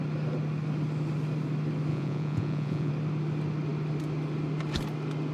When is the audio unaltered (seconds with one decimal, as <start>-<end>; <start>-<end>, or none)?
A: 0.0-1.9; 2.9-5.3